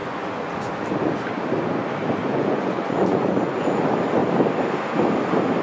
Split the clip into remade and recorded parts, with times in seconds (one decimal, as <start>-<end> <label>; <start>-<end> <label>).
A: 0.0-0.7 remade; 0.7-2.2 recorded; 2.2-3.8 remade; 3.8-5.6 recorded